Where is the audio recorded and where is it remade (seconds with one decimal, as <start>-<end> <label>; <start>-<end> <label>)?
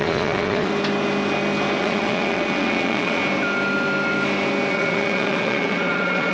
0.0-0.7 remade; 0.7-1.8 recorded; 1.8-3.2 remade; 3.2-4.7 recorded; 4.7-6.3 remade